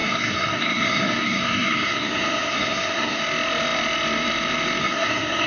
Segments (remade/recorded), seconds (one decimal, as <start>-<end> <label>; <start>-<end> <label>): 0.0-3.2 remade; 3.2-4.8 recorded; 4.8-5.5 remade